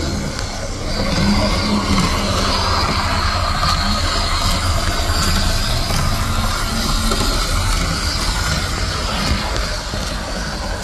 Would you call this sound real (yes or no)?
yes